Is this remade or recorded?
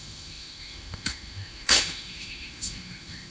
remade